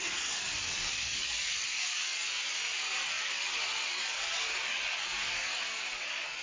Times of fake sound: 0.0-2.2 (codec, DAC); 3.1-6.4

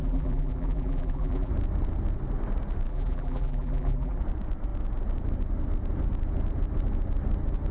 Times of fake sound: 0.0-1.5 (vocoder, BigVGAN v2); 2.9-4.2

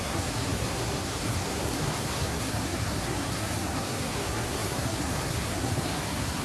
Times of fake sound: 0.0-6.4 (codec, SNAC)

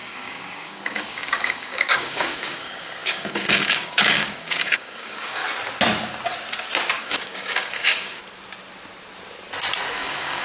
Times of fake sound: 0.0-5.4 (codec, DAC); 7.0-8.2; 9.9-10.4